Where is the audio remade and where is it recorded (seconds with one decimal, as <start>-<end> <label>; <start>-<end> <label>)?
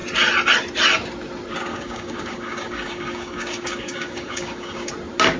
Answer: 0.0-1.7 recorded; 1.7-4.9 remade; 4.9-5.4 recorded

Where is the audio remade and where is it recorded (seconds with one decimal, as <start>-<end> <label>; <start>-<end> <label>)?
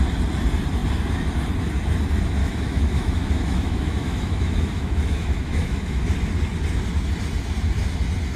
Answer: 0.0-2.4 recorded; 2.4-6.0 remade; 6.0-8.4 recorded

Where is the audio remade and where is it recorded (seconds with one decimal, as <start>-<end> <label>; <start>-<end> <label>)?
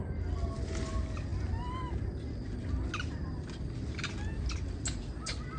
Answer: 0.0-5.6 recorded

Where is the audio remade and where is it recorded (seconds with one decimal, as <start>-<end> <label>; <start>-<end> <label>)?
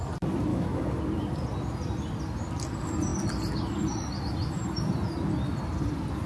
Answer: 0.0-0.5 recorded; 0.5-1.0 remade; 1.0-6.3 recorded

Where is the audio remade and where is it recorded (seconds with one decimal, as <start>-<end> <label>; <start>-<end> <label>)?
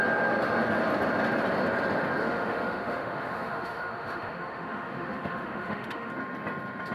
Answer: 0.0-2.2 recorded; 2.2-6.1 remade; 6.1-6.9 recorded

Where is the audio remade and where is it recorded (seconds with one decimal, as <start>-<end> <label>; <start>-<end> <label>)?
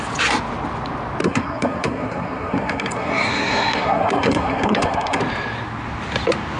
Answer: 0.0-1.2 recorded; 1.2-5.2 remade; 5.2-6.6 recorded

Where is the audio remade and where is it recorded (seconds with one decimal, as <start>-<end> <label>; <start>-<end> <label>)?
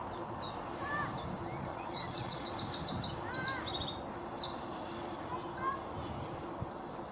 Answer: 0.0-1.7 recorded; 1.7-2.5 remade; 2.5-7.1 recorded